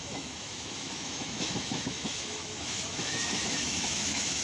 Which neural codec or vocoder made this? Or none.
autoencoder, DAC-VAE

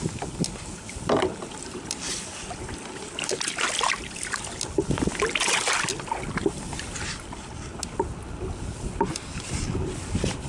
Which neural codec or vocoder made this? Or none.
none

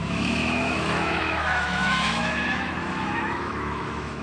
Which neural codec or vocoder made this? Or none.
autoencoder, DAC-VAE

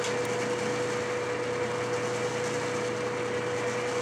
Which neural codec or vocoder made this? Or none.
none